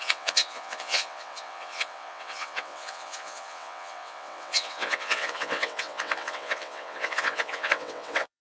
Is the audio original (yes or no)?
no